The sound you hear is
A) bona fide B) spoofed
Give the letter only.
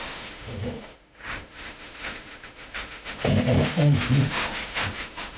B